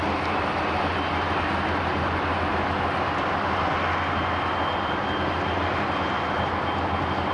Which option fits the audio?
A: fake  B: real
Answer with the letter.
B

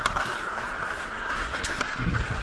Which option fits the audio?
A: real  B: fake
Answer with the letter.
B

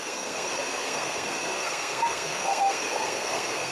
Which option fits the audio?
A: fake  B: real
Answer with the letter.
A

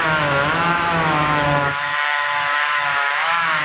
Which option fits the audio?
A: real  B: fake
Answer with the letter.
B